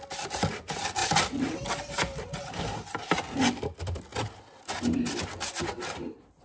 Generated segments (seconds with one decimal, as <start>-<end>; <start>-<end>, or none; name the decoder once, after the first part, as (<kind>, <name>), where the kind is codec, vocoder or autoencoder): none